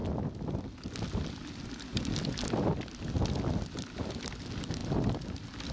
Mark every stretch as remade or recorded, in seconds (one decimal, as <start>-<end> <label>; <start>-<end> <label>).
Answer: 0.0-5.7 recorded